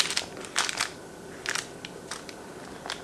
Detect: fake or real real